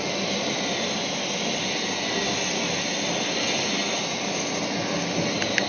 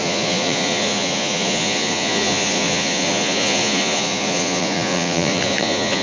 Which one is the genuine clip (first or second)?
first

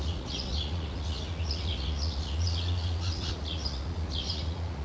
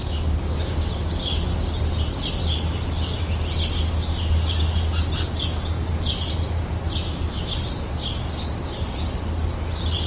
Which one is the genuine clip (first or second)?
second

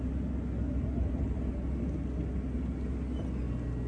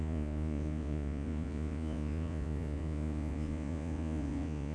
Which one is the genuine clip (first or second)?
first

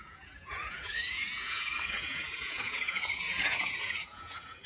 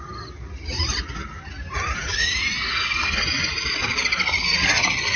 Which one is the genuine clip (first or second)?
second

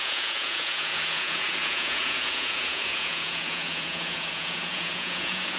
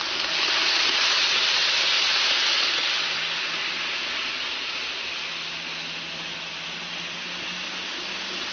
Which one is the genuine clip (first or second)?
second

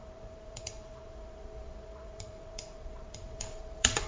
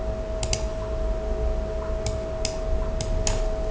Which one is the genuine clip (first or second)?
second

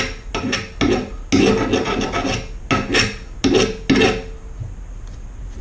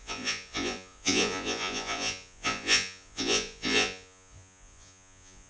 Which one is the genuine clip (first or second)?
first